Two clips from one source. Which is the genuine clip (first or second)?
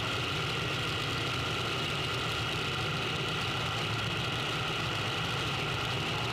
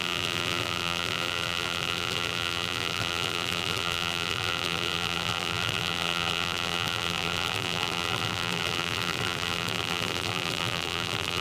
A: first